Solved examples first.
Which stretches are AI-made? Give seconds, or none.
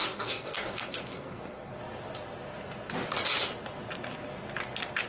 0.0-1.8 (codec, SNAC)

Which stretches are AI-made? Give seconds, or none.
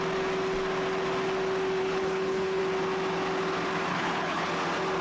1.8-2.6 (codec, HILCodec); 3.9-4.5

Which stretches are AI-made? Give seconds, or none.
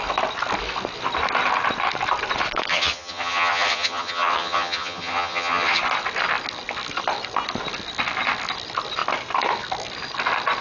2.7-5.8 (vocoder, HiFi-GAN)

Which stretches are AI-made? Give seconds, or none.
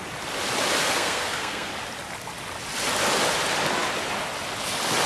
0.8-1.7 (codec, SNAC)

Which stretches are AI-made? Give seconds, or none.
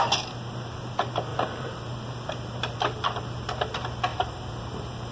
1.3-2.1 (vocoder, BigVGAN v2); 4.1-5.1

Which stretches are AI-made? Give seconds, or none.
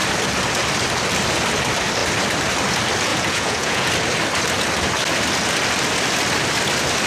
3.1-3.9 (vocoder, Vocos)